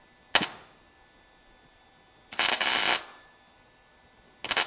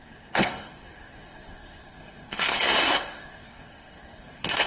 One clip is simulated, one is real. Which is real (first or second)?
first